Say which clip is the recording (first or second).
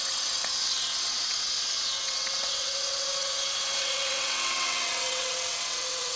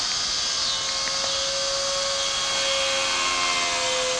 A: second